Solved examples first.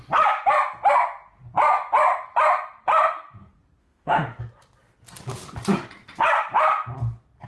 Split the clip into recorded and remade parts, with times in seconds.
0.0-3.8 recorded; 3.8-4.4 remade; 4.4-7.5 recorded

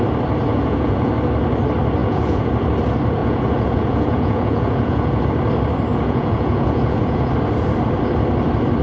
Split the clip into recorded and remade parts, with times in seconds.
0.0-0.5 recorded; 0.5-1.1 remade; 1.1-2.0 recorded; 2.0-2.5 remade; 2.5-3.2 recorded; 3.2-5.2 remade; 5.2-5.9 recorded; 5.9-7.3 remade; 7.3-8.8 recorded

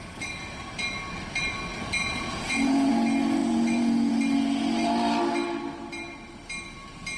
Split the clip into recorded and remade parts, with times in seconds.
0.0-1.7 recorded; 1.7-2.9 remade; 2.9-3.4 recorded; 3.4-4.1 remade; 4.1-7.2 recorded

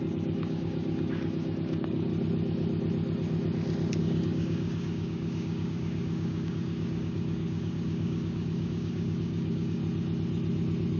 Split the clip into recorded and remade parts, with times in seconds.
0.0-2.1 remade; 2.1-4.0 recorded; 4.0-9.8 remade; 9.8-11.0 recorded

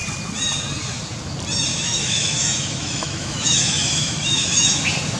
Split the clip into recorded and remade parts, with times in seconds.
0.0-1.7 recorded; 1.7-4.8 remade; 4.8-5.2 recorded

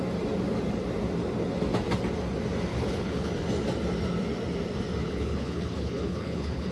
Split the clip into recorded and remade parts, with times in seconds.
0.0-2.7 recorded; 2.7-3.3 remade; 3.3-5.0 recorded; 5.0-6.7 remade

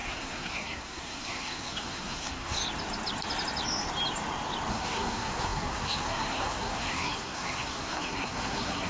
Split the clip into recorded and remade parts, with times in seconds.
0.0-2.6 remade; 2.6-4.7 recorded; 4.7-8.9 remade